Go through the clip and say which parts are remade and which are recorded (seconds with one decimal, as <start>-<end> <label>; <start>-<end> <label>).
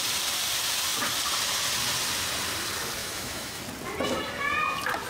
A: 0.0-3.0 recorded; 3.0-3.6 remade; 3.6-5.1 recorded